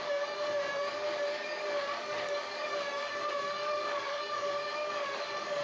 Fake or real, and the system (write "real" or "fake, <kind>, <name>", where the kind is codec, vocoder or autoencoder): fake, codec, DAC